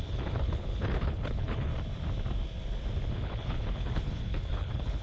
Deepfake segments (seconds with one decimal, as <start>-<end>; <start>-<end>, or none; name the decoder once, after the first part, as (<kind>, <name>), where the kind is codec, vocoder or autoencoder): 0.0-1.7 (codec, HILCodec); 3.1-5.0